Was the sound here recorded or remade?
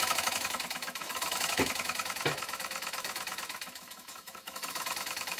remade